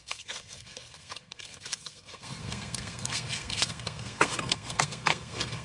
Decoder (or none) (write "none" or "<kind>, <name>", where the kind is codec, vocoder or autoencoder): codec, SNAC